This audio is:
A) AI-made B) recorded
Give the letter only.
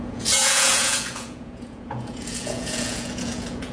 A